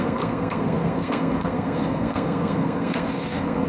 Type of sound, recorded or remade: remade